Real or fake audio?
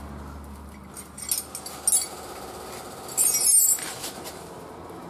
real